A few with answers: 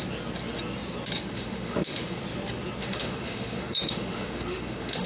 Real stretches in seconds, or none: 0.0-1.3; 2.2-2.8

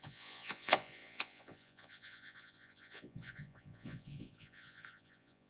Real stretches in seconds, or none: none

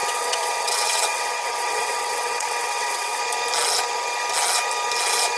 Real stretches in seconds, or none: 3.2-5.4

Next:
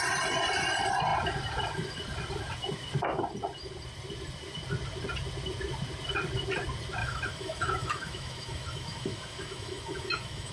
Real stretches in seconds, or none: 0.0-7.0

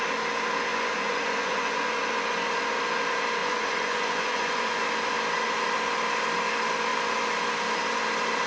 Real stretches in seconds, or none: 0.0-0.7; 2.0-3.4; 4.8-8.5

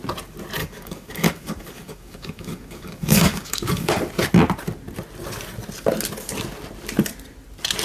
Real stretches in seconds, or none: 0.0-0.6; 3.9-7.8

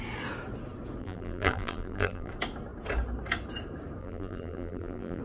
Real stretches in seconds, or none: 0.0-1.0; 2.3-4.0